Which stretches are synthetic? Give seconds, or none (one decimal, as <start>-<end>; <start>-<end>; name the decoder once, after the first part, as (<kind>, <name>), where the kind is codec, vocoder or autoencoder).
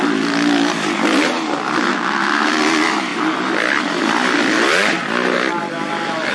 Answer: 1.9-2.5 (codec, SNAC)